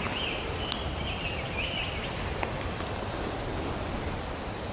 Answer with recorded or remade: recorded